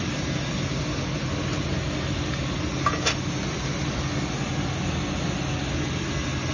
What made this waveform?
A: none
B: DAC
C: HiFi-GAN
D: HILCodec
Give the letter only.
A